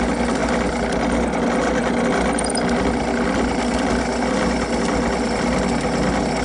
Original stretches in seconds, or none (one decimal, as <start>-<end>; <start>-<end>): 0.0-6.4